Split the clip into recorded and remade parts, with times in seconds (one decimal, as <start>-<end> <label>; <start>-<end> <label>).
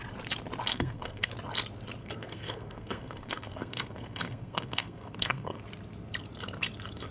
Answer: 0.0-0.7 recorded; 0.7-1.3 remade; 1.3-2.0 recorded; 2.0-5.6 remade; 5.6-7.1 recorded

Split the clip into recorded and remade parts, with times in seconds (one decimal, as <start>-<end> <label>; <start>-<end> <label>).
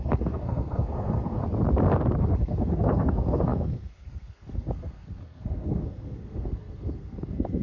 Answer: 0.0-1.4 remade; 1.4-2.2 recorded; 2.2-7.6 remade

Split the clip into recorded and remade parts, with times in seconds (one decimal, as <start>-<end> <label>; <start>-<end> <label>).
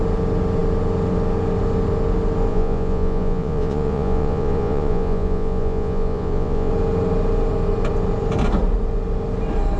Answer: 0.0-2.5 recorded; 2.5-6.7 remade; 6.7-9.8 recorded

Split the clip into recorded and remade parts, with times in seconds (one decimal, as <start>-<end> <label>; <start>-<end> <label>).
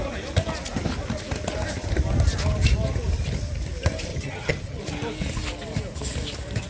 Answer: 0.0-4.1 recorded; 4.1-4.8 remade; 4.8-6.7 recorded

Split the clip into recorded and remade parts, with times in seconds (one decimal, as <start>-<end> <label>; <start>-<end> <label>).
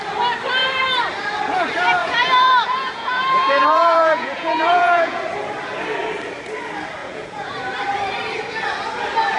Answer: 0.0-2.0 recorded; 2.0-5.2 remade; 5.2-7.0 recorded; 7.0-7.5 remade; 7.5-9.4 recorded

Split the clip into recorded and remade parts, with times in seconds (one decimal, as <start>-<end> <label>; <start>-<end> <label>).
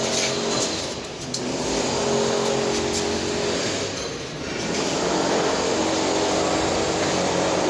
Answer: 0.0-7.7 recorded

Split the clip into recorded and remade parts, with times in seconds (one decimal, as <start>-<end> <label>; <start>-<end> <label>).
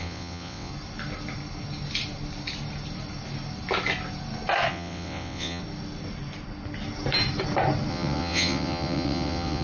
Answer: 0.0-0.7 remade; 0.7-4.7 recorded; 4.7-5.6 remade; 5.6-7.9 recorded; 7.9-9.6 remade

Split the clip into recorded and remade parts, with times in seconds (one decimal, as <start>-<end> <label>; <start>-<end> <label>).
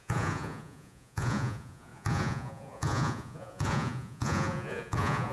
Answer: 0.0-5.3 remade